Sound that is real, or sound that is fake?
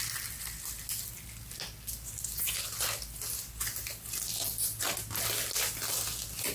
real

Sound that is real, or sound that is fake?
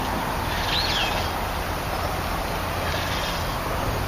real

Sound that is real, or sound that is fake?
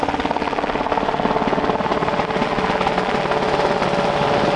real